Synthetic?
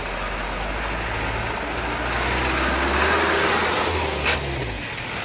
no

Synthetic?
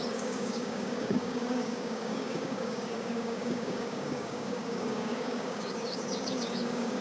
yes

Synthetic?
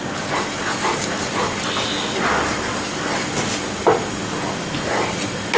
no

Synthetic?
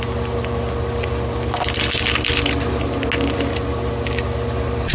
no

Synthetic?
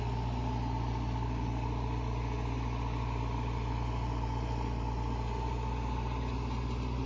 no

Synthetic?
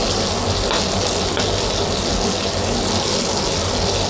no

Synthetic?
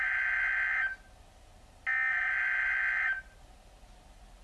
no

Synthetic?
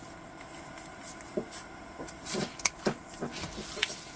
no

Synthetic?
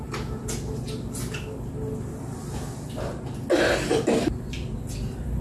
no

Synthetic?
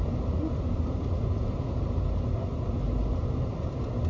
no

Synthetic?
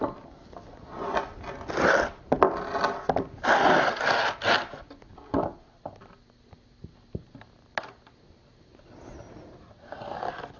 no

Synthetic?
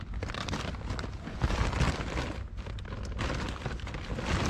no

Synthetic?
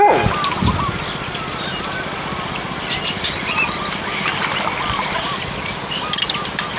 no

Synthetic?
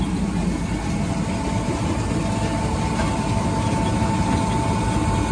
no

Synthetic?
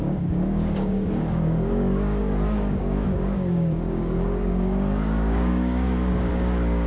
yes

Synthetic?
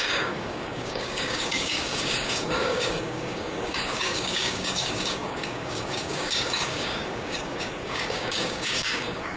yes